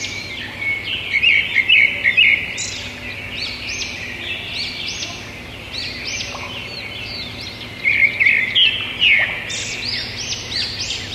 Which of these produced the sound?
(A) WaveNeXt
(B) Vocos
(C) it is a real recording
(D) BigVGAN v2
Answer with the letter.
C